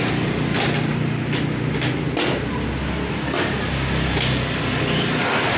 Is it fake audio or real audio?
real